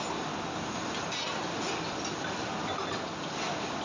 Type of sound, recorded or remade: recorded